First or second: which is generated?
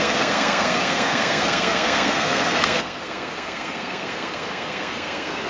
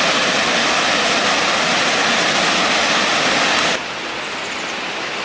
first